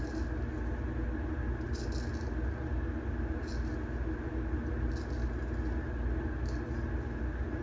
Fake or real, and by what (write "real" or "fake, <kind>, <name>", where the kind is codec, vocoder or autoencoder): real